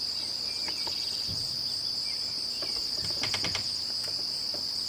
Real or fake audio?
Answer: real